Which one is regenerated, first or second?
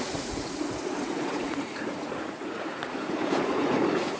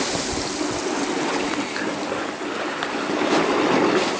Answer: first